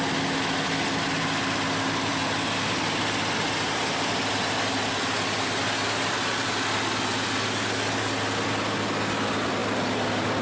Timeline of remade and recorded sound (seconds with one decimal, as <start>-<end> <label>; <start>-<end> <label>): 0.0-10.4 recorded